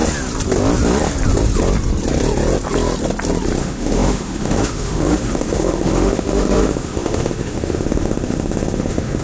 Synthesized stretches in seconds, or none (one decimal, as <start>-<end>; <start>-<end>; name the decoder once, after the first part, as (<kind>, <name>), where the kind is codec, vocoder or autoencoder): 3.6-9.2 (autoencoder, DAC-VAE)